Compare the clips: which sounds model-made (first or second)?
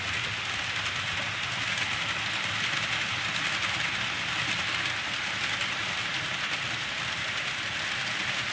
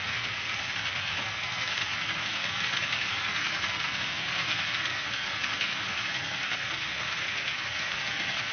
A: second